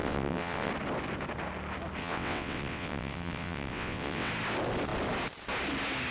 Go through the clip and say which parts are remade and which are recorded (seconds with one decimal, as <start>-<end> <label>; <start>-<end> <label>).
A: 0.0-0.7 remade; 0.7-2.0 recorded; 2.0-4.3 remade; 4.3-6.1 recorded